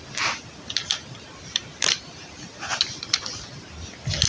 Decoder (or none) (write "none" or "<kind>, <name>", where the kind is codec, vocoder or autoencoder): none